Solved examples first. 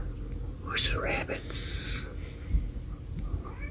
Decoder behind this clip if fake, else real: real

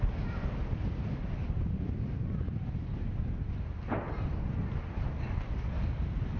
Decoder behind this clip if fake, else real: real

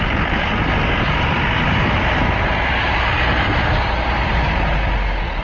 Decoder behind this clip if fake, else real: real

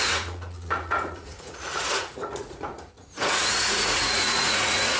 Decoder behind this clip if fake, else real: fake, vocoder, Vocos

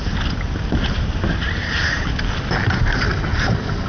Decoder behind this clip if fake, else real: real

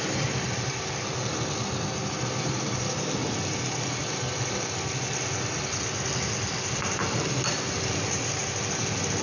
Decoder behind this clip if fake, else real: real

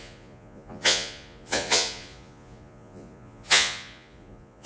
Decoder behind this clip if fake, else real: fake, vocoder, Vocos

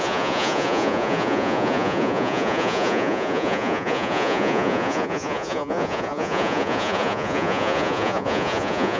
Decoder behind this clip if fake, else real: fake, vocoder, Vocos